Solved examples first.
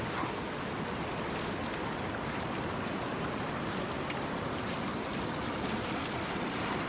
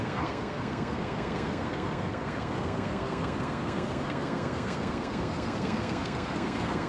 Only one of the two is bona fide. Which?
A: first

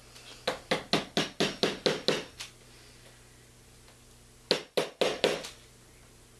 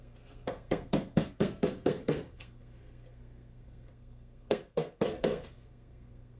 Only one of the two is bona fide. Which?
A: first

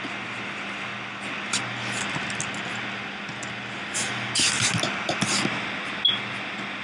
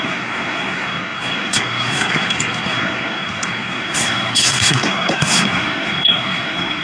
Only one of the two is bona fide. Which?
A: first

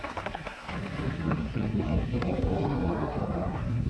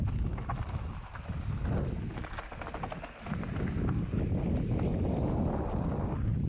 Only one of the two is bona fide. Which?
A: second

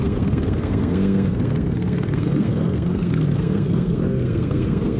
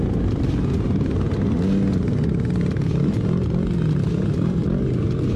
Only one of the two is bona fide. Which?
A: second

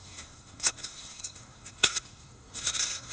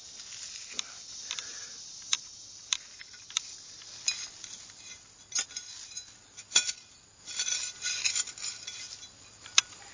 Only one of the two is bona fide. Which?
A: second